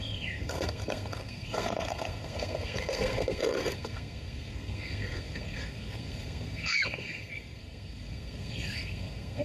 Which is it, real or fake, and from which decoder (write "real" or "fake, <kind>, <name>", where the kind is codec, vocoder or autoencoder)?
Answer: fake, codec, SNAC